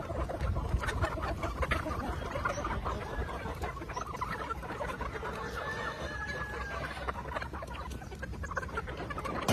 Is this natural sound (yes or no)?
no